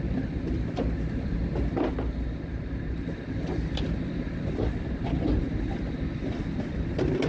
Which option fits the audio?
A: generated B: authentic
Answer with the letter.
B